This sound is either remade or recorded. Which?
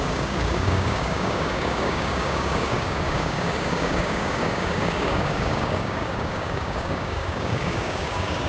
remade